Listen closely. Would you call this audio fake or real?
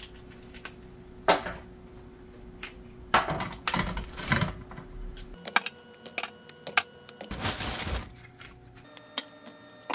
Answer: real